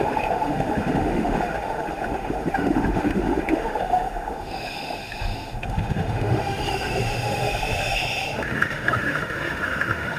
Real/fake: fake